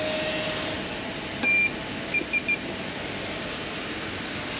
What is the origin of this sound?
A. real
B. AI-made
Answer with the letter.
A